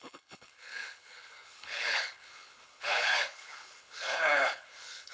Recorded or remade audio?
remade